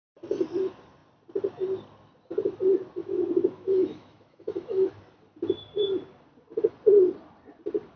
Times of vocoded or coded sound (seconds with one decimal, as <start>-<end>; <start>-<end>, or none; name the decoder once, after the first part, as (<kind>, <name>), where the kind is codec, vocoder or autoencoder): 3.0-4.9 (autoencoder, DAC-VAE)